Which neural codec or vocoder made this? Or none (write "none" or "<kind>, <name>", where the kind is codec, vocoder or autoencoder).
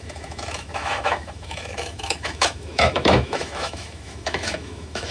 autoencoder, DAC-VAE